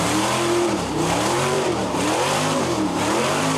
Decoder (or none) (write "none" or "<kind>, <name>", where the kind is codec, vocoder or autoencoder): vocoder, BigVGAN v2